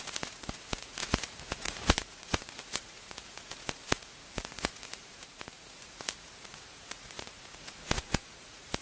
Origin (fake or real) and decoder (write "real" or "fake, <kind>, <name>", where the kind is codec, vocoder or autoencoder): fake, vocoder, Vocos